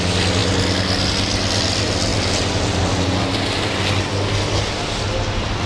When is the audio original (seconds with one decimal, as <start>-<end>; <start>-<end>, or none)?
0.0-5.7